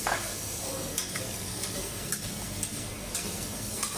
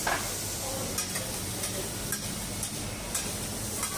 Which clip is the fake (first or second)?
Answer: first